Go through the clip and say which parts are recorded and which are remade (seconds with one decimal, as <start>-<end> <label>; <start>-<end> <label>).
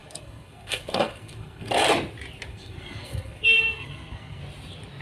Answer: 0.0-1.7 remade; 1.7-2.5 recorded; 2.5-4.4 remade; 4.4-5.0 recorded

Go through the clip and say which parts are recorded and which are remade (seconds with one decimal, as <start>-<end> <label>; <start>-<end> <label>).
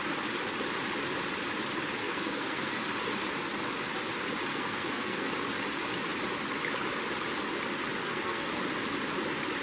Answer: 0.0-2.0 recorded; 2.0-2.8 remade; 2.8-4.5 recorded; 4.5-5.3 remade; 5.3-8.0 recorded; 8.0-8.6 remade; 8.6-9.6 recorded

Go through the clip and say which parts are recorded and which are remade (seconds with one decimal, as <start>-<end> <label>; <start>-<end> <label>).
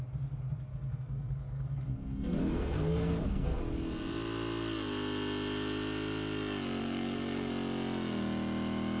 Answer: 0.0-0.7 recorded; 0.7-3.6 remade; 3.6-6.8 recorded; 6.8-7.5 remade; 7.5-9.0 recorded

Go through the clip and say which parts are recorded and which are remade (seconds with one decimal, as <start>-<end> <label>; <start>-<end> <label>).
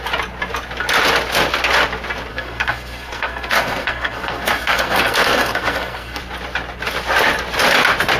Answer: 0.0-2.3 recorded; 2.3-6.2 remade; 6.2-8.2 recorded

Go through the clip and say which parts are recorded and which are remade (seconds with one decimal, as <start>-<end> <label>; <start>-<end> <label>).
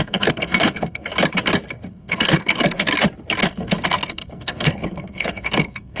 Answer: 0.0-1.1 remade; 1.1-1.9 recorded; 1.9-2.9 remade; 2.9-3.4 recorded; 3.4-6.0 remade